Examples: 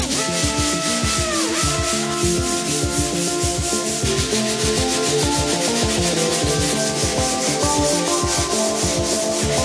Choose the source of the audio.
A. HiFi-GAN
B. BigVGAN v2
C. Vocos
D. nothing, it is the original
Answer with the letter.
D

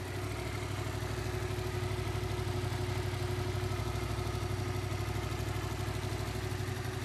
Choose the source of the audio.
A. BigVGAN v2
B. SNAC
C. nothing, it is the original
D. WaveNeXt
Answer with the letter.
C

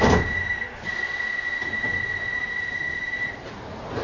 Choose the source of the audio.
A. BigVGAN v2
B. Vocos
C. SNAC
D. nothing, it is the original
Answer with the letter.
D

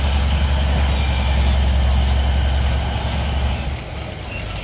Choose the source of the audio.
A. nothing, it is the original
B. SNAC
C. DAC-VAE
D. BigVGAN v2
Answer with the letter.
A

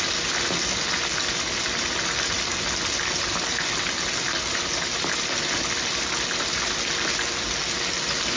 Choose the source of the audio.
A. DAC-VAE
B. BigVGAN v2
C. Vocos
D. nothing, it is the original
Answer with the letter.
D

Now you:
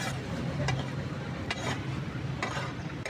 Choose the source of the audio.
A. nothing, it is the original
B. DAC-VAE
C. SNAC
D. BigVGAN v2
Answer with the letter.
D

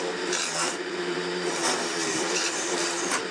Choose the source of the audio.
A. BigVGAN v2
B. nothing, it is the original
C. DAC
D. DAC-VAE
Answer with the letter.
A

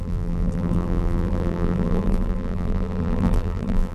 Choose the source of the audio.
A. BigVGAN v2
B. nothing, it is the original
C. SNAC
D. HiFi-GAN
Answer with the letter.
A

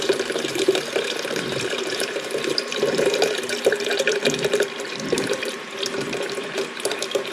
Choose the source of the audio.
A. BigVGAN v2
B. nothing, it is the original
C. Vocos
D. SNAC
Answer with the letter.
A